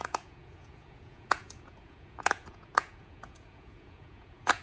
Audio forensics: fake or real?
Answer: fake